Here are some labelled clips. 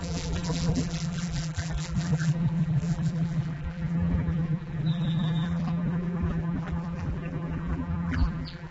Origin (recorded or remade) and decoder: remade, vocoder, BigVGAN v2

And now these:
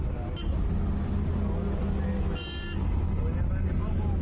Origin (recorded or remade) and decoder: recorded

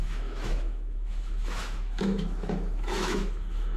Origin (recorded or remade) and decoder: remade, autoencoder, DAC-VAE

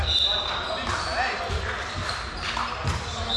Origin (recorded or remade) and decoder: recorded